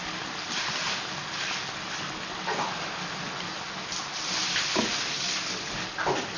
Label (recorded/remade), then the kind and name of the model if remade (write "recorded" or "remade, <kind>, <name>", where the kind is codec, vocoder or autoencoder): recorded